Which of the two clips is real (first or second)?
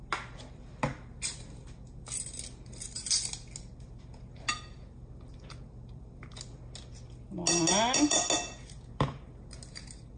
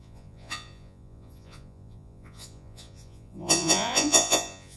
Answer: first